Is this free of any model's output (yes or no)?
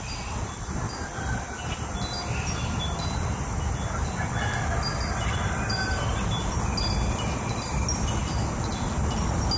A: yes